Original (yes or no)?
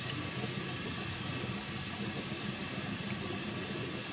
yes